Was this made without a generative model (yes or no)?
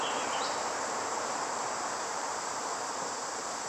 no